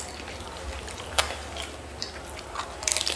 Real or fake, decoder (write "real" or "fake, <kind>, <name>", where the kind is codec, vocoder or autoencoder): real